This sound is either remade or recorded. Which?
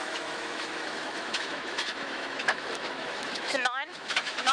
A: remade